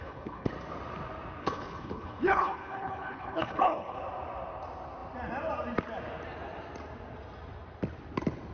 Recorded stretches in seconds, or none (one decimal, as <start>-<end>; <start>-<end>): 0.5-1.4; 4.0-8.5